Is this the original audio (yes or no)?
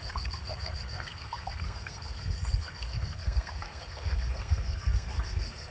no